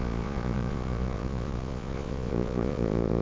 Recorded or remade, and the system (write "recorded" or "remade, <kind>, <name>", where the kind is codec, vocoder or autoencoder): remade, vocoder, Vocos